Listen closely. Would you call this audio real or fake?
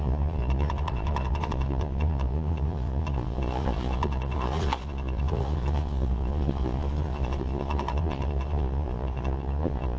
fake